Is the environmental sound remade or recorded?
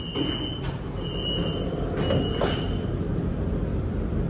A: recorded